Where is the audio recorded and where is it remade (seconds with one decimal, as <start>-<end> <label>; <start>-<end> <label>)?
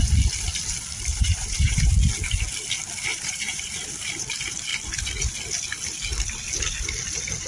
0.0-1.1 recorded; 1.1-1.9 remade; 1.9-3.1 recorded; 3.1-3.7 remade; 3.7-7.5 recorded